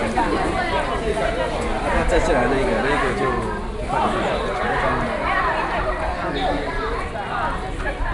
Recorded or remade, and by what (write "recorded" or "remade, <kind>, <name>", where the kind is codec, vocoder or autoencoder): recorded